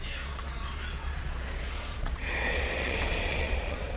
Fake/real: fake